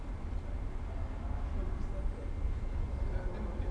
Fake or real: real